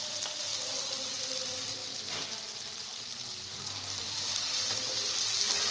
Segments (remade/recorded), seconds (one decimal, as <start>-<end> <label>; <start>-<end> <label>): 0.0-4.0 recorded; 4.0-4.8 remade; 4.8-5.7 recorded